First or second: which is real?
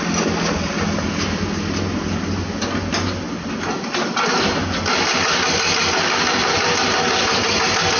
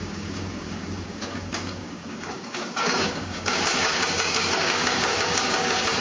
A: first